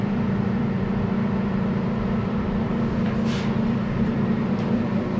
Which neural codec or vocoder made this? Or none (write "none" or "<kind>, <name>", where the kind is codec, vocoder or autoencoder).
vocoder, BigVGAN v2